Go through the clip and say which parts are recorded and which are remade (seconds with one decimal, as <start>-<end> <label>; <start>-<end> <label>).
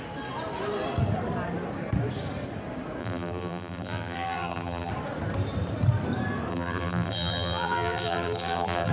0.0-3.0 recorded; 3.0-4.9 remade; 4.9-6.5 recorded; 6.5-8.9 remade